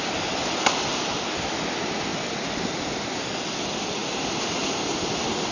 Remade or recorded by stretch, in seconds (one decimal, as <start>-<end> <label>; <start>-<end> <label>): 0.0-5.5 recorded